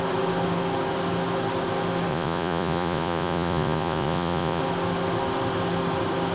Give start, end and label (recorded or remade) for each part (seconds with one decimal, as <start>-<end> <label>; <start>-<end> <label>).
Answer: 0.0-2.1 recorded; 2.1-4.6 remade; 4.6-6.3 recorded